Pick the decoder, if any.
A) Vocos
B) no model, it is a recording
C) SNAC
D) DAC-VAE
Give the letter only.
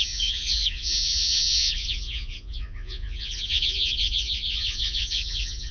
A